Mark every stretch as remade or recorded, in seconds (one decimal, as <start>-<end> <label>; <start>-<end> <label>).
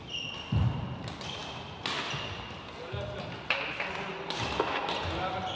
0.0-5.6 recorded